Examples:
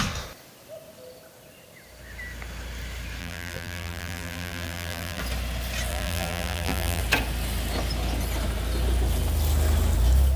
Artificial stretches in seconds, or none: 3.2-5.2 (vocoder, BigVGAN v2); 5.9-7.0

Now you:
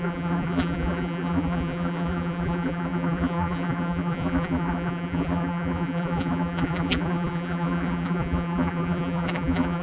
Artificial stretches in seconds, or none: 0.0-9.8 (vocoder, BigVGAN v2)

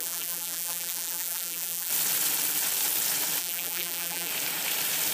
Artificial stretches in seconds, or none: 0.0-1.9 (vocoder, BigVGAN v2); 3.4-4.3

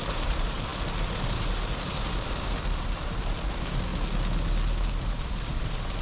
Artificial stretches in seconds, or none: 0.0-0.7 (vocoder, BigVGAN v2); 2.8-3.9; 5.2-6.0

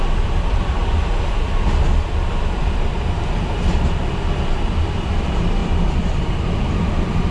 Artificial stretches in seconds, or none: 0.0-0.8 (vocoder, BigVGAN v2); 2.6-4.0; 4.8-5.6; 6.8-7.3

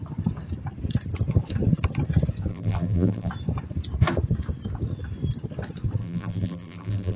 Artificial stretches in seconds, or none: 2.5-3.3 (vocoder, BigVGAN v2); 6.0-7.2